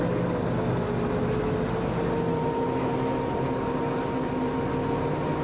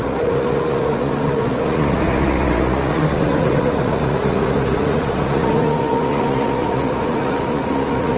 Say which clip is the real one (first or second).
first